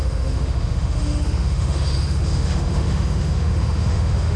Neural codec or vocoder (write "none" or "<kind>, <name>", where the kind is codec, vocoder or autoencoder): autoencoder, DAC-VAE